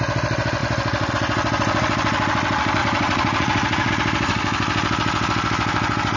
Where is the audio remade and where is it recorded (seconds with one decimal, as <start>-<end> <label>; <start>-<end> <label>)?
0.0-2.8 recorded; 2.8-3.9 remade; 3.9-6.2 recorded